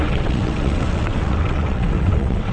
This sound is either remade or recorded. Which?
remade